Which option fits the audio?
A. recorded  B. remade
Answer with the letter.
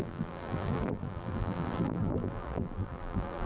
B